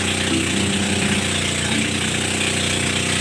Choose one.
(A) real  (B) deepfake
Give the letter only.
A